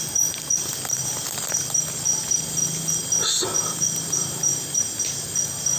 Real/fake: real